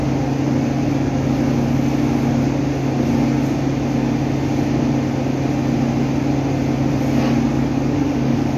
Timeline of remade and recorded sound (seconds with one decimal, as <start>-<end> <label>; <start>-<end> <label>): 0.0-7.5 recorded; 7.5-8.6 remade